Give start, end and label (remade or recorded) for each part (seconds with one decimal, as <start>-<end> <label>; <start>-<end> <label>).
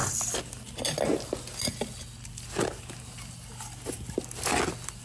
0.0-5.0 recorded